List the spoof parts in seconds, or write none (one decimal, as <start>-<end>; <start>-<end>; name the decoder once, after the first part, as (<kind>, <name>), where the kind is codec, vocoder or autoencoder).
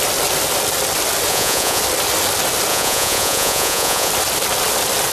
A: 1.3-1.8 (vocoder, Vocos); 2.7-4.1